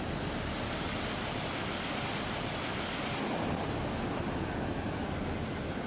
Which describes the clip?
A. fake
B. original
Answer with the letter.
B